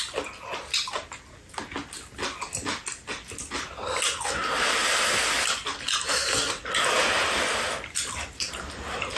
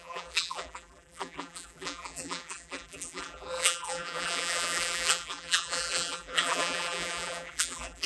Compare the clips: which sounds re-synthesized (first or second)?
second